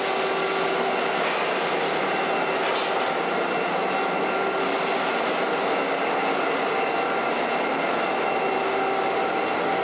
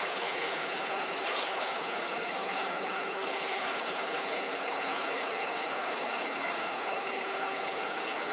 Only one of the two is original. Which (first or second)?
first